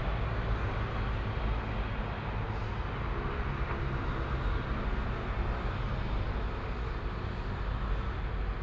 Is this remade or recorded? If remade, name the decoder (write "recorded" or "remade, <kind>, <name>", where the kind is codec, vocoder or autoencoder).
recorded